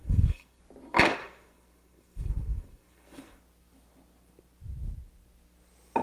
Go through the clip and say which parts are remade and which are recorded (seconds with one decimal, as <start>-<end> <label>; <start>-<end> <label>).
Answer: 0.0-0.6 remade; 0.6-1.2 recorded; 1.2-3.4 remade; 3.4-6.0 recorded